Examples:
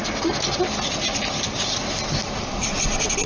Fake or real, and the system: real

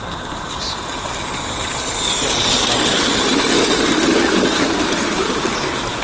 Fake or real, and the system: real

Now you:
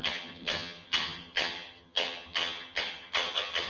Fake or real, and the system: fake, vocoder, HiFi-GAN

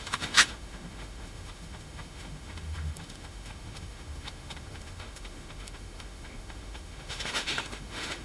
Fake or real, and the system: fake, autoencoder, DAC-VAE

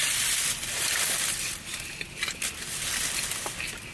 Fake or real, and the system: real